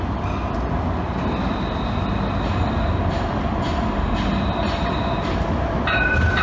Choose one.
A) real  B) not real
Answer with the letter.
A